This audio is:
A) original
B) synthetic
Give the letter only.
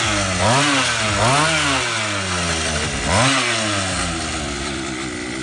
A